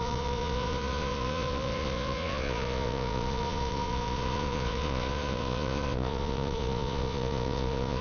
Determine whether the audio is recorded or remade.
remade